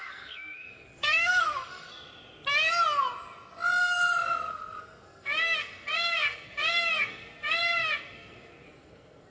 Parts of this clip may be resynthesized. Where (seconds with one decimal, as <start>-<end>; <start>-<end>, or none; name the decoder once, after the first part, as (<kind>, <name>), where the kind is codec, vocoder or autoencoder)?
0.0-1.9 (codec, SNAC); 3.8-9.3